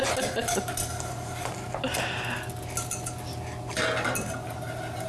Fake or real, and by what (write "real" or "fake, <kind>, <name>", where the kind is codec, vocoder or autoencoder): real